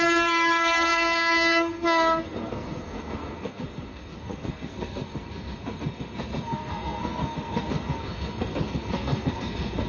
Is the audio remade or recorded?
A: remade